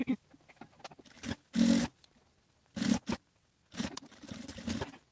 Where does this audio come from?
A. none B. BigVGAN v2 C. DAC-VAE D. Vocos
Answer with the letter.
A